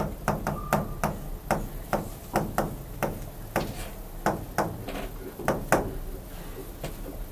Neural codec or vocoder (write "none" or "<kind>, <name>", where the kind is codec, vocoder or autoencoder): none